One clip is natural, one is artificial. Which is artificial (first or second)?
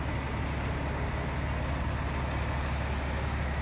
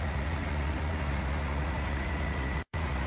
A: second